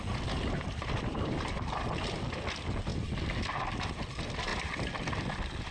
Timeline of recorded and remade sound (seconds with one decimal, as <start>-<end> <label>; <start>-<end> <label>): 0.0-5.7 recorded